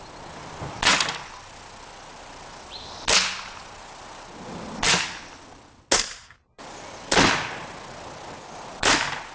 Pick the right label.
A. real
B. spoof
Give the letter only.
A